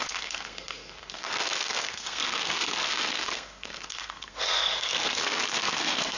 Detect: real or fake fake